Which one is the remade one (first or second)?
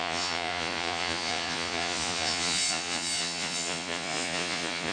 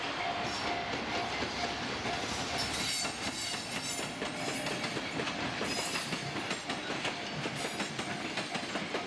first